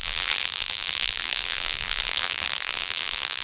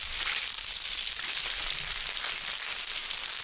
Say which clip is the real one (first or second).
second